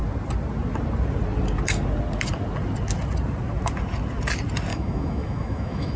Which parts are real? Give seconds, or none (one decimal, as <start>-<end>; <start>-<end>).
0.0-4.7